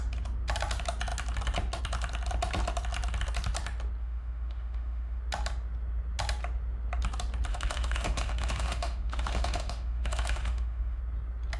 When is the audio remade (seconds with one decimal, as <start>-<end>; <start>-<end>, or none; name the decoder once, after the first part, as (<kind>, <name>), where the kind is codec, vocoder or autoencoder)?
4.0-5.2 (autoencoder, DAC-VAE); 7.5-11.0